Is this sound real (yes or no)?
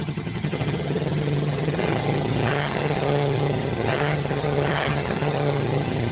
no